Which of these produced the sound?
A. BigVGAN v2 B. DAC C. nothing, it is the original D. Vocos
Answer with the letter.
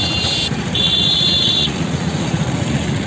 D